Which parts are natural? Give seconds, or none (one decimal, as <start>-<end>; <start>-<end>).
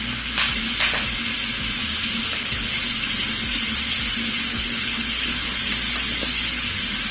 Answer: 0.0-2.2; 2.8-4.5; 5.6-7.1